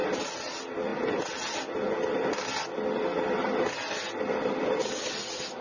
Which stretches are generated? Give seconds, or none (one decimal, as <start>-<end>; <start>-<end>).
none